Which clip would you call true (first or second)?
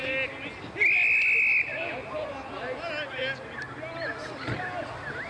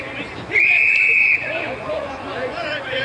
first